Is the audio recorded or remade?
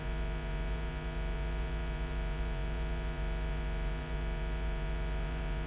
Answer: remade